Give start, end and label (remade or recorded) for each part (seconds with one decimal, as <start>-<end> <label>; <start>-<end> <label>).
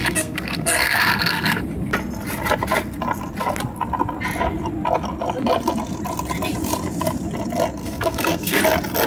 0.0-1.6 remade; 1.6-7.8 recorded; 7.8-8.6 remade; 8.6-9.1 recorded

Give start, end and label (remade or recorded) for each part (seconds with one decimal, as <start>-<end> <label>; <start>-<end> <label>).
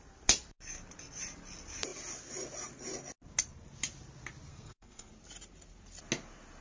0.0-4.5 recorded; 4.5-5.1 remade; 5.1-6.6 recorded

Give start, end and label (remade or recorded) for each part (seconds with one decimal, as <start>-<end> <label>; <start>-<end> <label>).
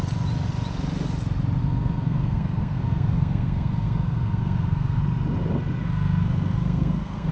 0.0-1.6 recorded; 1.6-5.0 remade; 5.0-5.8 recorded; 5.8-7.3 remade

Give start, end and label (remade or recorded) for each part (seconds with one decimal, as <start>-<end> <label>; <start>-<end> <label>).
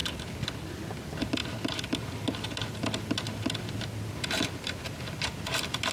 0.0-5.9 recorded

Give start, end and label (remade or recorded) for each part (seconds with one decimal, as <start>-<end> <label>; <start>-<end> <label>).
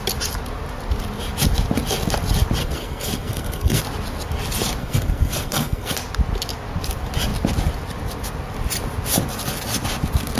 0.0-2.6 recorded; 2.6-3.8 remade; 3.8-4.8 recorded; 4.8-5.9 remade; 5.9-10.4 recorded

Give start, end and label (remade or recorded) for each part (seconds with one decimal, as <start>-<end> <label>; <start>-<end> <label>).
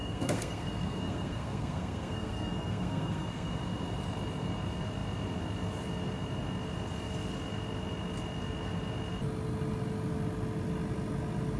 0.0-3.5 remade; 3.5-11.6 recorded